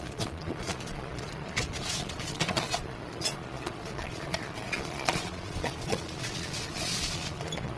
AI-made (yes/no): yes